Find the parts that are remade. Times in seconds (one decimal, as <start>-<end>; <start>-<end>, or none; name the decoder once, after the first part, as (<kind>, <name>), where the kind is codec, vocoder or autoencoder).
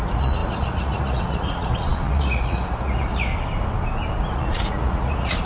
0.0-3.3 (vocoder, Vocos); 4.3-5.5